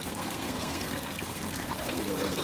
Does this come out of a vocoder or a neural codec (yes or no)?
yes